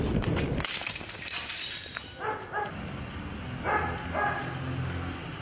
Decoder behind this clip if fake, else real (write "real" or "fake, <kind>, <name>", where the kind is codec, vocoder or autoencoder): real